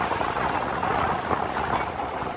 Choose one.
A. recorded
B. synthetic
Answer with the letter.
B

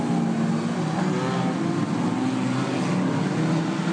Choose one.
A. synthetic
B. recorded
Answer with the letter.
B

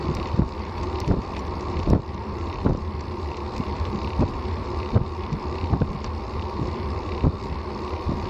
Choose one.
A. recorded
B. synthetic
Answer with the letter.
B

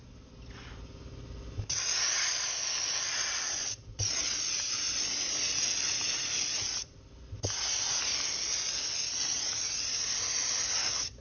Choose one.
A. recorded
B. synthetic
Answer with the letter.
A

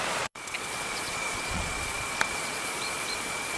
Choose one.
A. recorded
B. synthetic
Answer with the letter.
B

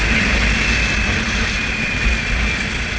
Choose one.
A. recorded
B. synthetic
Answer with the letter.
A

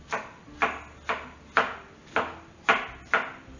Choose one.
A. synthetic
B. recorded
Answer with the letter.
B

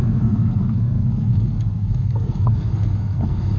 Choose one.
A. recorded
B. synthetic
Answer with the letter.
B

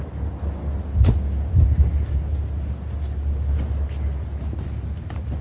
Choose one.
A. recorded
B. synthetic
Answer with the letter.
A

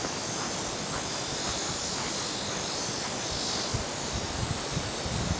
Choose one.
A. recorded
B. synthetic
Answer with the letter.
A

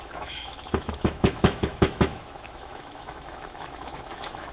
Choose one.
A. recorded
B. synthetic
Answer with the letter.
B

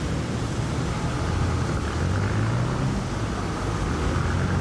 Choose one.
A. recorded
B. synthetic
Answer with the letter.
A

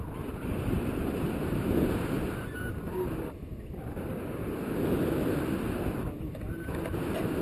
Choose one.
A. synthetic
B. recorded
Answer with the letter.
B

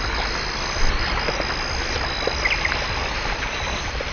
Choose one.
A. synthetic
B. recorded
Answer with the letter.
B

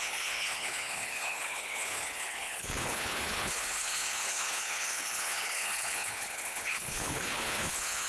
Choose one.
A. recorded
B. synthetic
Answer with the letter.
B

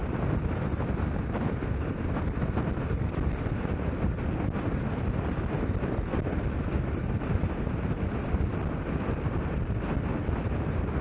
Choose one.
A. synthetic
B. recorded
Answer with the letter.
B